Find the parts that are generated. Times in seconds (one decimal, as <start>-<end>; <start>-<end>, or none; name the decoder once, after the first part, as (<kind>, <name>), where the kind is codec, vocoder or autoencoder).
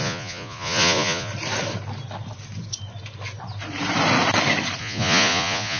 0.0-1.3 (vocoder, Vocos); 4.8-5.8